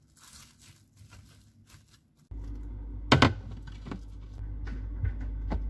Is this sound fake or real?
real